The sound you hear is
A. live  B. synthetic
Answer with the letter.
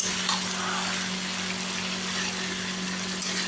A